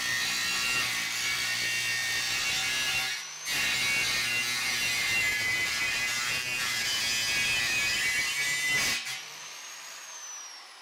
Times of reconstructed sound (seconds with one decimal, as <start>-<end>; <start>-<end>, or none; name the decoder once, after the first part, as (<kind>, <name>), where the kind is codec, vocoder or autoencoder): 5.3-7.0 (vocoder, BigVGAN v2)